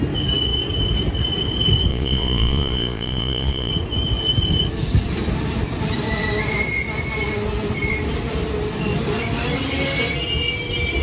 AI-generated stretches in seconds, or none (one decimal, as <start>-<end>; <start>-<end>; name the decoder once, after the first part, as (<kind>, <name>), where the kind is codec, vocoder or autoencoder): 1.9-3.7 (vocoder, Vocos)